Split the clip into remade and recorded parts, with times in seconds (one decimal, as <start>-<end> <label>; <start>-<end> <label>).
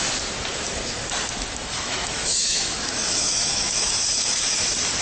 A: 0.0-1.6 recorded; 1.6-4.6 remade; 4.6-5.0 recorded